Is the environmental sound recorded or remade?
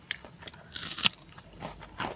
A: recorded